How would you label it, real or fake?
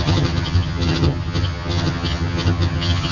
fake